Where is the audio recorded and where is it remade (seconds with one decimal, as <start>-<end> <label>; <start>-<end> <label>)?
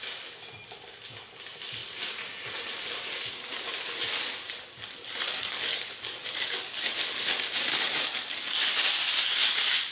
0.0-5.3 recorded; 5.3-6.9 remade; 6.9-7.7 recorded; 7.7-8.7 remade; 8.7-9.9 recorded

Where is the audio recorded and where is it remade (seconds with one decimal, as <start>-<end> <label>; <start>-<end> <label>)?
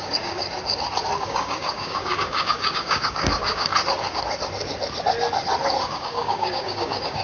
0.0-0.4 remade; 0.4-1.2 recorded; 1.2-3.7 remade; 3.7-5.9 recorded; 5.9-7.2 remade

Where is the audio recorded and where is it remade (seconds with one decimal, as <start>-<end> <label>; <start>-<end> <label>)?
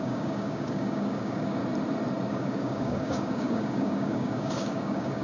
0.0-1.6 remade; 1.6-2.3 recorded; 2.3-5.2 remade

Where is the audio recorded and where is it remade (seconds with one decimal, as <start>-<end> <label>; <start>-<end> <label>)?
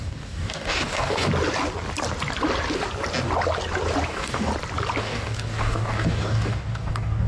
0.0-1.3 remade; 1.3-4.1 recorded; 4.1-4.5 remade; 4.5-5.0 recorded; 5.0-7.3 remade